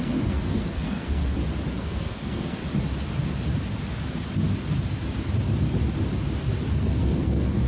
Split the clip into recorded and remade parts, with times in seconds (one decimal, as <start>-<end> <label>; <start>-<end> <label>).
0.0-1.2 remade; 1.2-1.7 recorded; 1.7-2.6 remade; 2.6-6.7 recorded; 6.7-7.7 remade